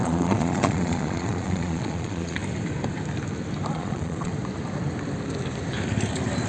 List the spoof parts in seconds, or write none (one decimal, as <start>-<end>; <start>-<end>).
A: 0.0-2.4; 3.7-4.3